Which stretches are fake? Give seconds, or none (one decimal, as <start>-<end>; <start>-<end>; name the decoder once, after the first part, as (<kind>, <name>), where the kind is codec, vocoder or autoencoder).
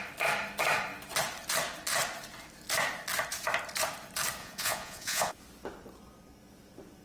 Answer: 4.4-5.4 (vocoder, Vocos)